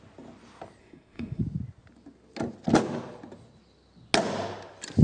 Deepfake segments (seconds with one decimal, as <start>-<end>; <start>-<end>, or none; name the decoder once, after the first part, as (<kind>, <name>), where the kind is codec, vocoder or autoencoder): 0.8-1.4 (codec, SNAC)